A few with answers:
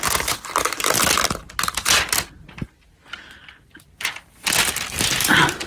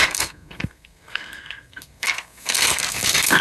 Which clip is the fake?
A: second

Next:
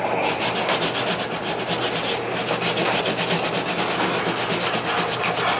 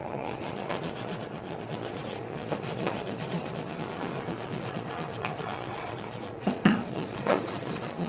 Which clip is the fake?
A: second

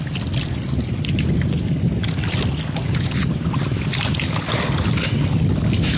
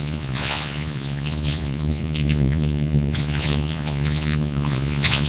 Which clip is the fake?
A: second